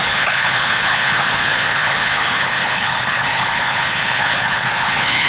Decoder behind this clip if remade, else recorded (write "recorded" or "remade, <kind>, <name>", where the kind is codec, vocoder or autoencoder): remade, codec, HILCodec